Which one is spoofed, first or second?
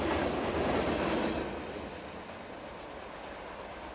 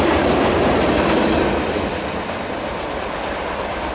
second